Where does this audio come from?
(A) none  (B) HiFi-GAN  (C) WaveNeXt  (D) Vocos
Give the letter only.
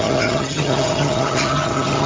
B